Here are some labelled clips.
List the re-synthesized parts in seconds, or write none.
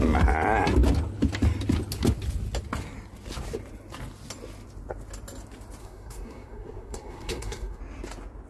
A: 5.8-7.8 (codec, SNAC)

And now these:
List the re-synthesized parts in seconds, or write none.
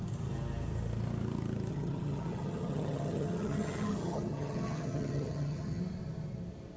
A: 1.7-5.8 (vocoder, HiFi-GAN)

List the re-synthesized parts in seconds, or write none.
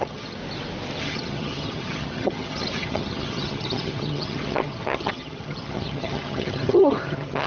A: 0.0-0.4 (vocoder, HiFi-GAN); 1.0-7.5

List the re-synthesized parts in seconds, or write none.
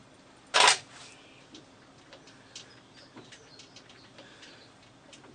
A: none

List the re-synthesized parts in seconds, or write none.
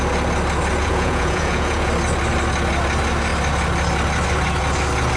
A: 0.8-1.9 (vocoder, Vocos)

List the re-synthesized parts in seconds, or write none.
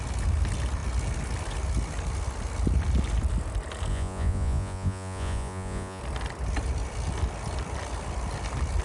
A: 3.9-6.0 (vocoder, Vocos)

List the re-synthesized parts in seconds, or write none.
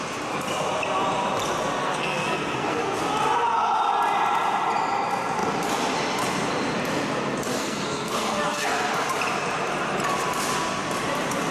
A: 1.8-3.0 (codec, SNAC); 7.5-8.9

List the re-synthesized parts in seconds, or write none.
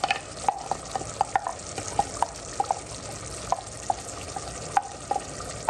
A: none